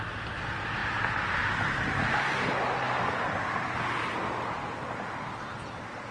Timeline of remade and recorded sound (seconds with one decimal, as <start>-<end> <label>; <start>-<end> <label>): 0.0-0.8 recorded; 0.8-1.5 remade; 1.5-6.1 recorded